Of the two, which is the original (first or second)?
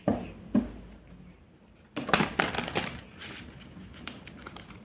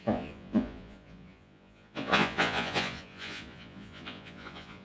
first